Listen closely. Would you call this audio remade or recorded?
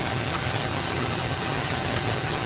remade